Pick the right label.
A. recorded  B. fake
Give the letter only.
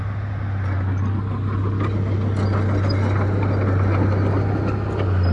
A